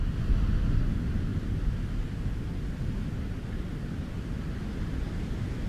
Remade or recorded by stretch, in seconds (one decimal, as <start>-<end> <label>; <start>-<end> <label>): 0.0-5.7 recorded